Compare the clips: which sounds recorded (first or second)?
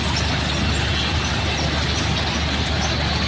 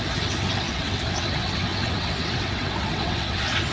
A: first